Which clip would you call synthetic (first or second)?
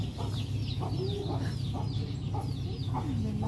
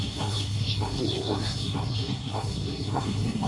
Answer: second